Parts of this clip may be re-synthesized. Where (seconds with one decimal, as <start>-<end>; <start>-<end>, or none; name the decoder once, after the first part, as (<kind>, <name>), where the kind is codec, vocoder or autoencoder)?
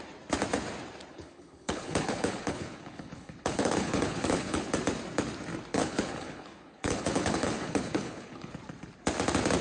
1.1-4.7 (codec, HILCodec); 5.7-8.5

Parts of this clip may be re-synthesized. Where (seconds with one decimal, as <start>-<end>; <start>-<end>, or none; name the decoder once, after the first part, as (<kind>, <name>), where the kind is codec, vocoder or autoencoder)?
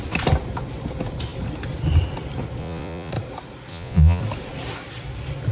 2.6-3.1 (vocoder, Vocos); 3.7-4.2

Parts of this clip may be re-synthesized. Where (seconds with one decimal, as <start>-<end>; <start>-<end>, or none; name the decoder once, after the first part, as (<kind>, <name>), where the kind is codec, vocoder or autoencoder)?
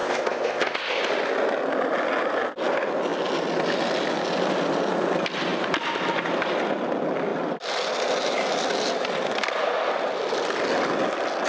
0.0-1.0 (codec, ZipCodec)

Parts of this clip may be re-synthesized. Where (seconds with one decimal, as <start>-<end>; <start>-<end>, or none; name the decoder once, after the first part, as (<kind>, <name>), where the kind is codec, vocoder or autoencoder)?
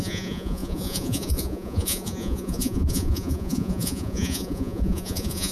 0.0-5.5 (vocoder, Vocos)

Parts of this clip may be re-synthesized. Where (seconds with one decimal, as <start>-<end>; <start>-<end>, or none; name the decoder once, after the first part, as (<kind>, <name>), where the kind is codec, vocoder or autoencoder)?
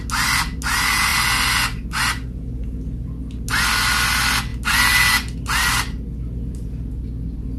none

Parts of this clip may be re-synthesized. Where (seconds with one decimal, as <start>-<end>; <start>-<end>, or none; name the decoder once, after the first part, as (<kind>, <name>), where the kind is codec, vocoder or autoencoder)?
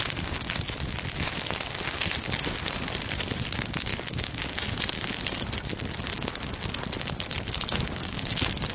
none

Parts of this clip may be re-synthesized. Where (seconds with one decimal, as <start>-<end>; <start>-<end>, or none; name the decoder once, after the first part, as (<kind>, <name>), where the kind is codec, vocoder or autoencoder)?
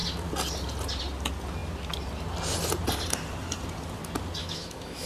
4.4-5.1 (autoencoder, DAC-VAE)